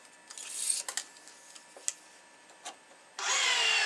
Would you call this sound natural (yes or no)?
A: yes